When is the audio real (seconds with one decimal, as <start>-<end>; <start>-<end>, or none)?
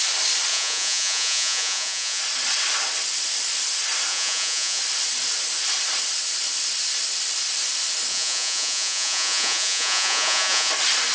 0.0-0.5; 2.2-4.1; 4.8-8.1; 10.7-11.1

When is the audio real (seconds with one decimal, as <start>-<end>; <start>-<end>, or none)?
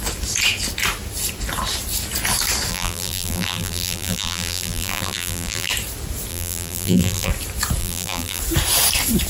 0.0-2.7; 5.7-6.3; 7.3-7.8; 8.4-9.3